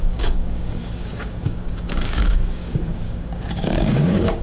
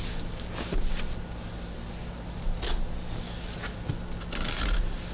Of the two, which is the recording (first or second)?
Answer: second